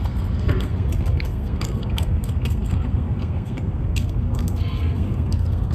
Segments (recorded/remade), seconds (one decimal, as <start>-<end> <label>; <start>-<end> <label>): 0.0-5.7 remade